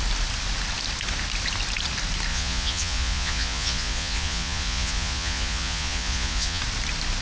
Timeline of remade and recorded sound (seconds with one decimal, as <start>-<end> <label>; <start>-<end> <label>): 0.0-2.3 recorded; 2.3-6.6 remade; 6.6-7.2 recorded